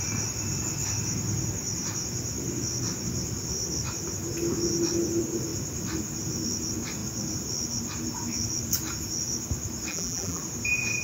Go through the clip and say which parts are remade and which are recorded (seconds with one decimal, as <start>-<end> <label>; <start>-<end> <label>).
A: 0.0-9.9 recorded; 9.9-10.4 remade; 10.4-11.0 recorded